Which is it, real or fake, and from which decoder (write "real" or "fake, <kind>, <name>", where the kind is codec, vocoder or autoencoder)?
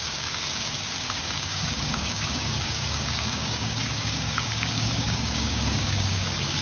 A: fake, codec, DAC